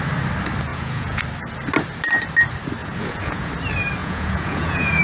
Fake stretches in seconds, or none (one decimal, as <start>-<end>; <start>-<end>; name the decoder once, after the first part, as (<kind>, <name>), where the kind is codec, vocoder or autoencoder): 0.7-1.2 (vocoder, Vocos); 2.8-3.5; 4.0-5.0